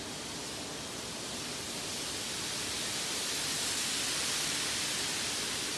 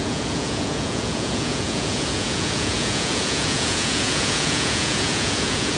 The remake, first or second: second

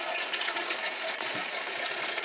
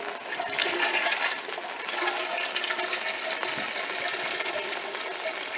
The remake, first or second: first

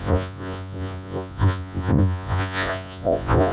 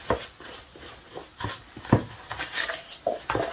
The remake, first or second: first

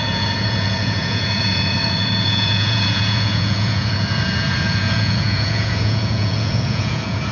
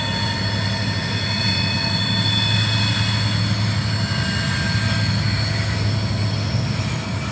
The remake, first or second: first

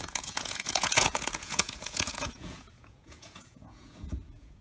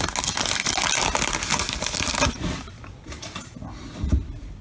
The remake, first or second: first